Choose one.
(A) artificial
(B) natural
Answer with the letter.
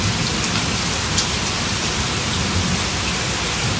B